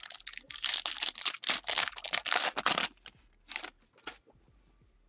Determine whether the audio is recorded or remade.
recorded